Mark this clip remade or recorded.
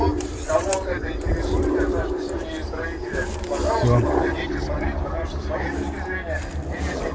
recorded